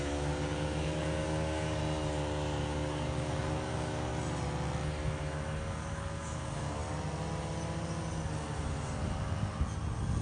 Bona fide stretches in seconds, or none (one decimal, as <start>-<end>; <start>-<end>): 1.8-2.6; 4.1-5.7; 6.8-10.2